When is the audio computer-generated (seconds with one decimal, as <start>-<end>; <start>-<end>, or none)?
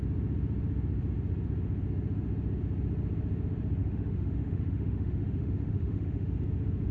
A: 3.8-6.3